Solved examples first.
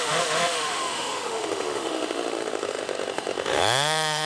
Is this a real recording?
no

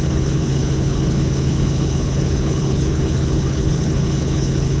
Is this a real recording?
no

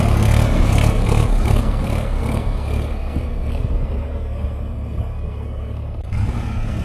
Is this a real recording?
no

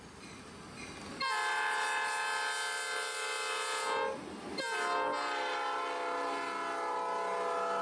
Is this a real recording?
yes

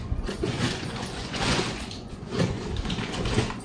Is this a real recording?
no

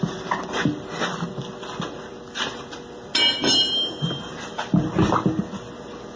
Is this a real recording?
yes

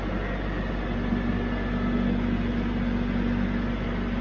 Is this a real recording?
yes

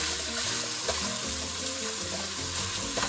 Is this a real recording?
no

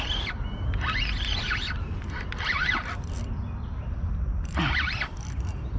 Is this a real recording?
yes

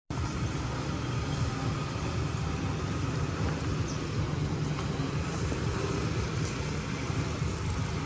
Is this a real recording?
yes